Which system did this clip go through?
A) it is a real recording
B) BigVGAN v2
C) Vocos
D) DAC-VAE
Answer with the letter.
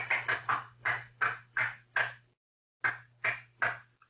A